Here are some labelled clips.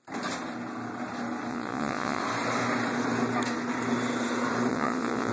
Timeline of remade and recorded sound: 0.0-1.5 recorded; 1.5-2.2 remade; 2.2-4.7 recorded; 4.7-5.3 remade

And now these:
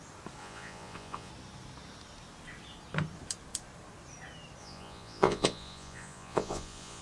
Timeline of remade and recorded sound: 0.0-0.4 recorded; 0.4-1.3 remade; 1.3-4.6 recorded; 4.6-7.0 remade

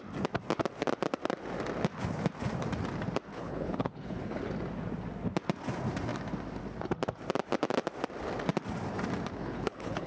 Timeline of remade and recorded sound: 0.0-3.3 recorded; 3.3-4.4 remade; 4.4-9.4 recorded; 9.4-10.1 remade

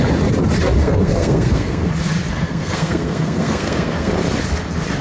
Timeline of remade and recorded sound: 0.0-0.8 recorded; 0.8-1.9 remade; 1.9-2.3 recorded; 2.3-4.1 remade; 4.1-5.0 recorded